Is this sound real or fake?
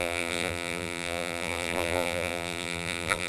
fake